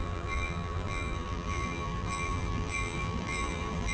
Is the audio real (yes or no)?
no